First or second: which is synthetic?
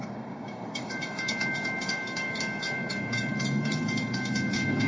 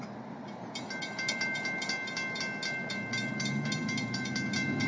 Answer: first